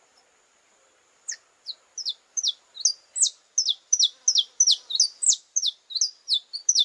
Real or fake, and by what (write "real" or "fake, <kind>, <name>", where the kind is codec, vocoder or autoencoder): real